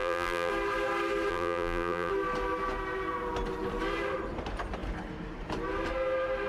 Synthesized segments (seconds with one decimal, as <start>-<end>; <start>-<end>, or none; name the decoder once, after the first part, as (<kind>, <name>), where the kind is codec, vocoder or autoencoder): 0.0-0.5 (vocoder, BigVGAN v2); 1.3-2.1

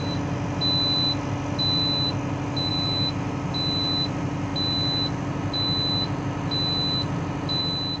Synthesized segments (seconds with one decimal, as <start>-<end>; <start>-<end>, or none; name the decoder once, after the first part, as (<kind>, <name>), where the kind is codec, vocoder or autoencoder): none